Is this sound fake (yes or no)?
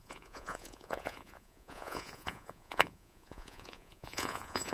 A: yes